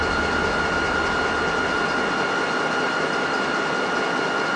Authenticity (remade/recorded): recorded